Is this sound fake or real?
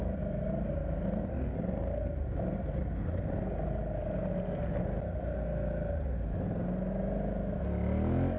real